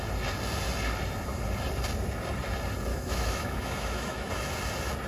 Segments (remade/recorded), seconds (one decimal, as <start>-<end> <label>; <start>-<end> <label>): 0.0-2.9 recorded; 2.9-4.3 remade; 4.3-5.1 recorded